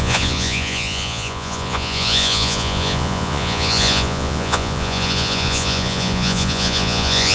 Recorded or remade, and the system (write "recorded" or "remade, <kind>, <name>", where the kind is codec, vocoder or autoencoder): remade, vocoder, Vocos